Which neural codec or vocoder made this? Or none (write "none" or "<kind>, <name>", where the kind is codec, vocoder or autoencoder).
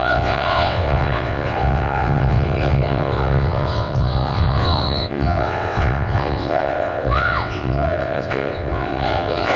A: vocoder, WaveNeXt